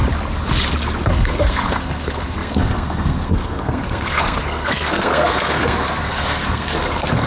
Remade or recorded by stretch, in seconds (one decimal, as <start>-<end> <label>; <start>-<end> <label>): 0.0-1.0 recorded; 1.0-7.3 remade